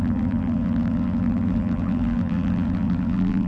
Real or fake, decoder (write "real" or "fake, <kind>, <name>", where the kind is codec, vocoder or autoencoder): fake, vocoder, BigVGAN v2